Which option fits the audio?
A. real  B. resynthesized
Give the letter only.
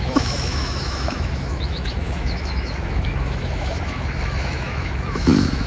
B